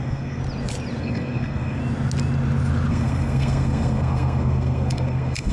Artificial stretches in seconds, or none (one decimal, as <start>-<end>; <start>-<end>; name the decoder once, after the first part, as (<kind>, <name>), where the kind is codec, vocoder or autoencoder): 0.0-0.4 (codec, SNAC); 1.0-1.8; 2.9-5.5